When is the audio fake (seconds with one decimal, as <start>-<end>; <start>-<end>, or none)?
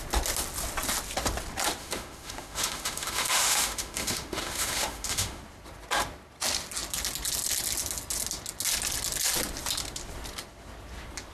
1.8-5.4